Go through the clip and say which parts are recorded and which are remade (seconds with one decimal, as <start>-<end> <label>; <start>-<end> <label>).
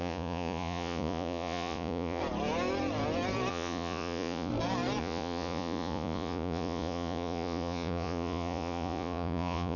0.0-2.2 remade; 2.2-3.5 recorded; 3.5-4.5 remade; 4.5-5.0 recorded; 5.0-9.8 remade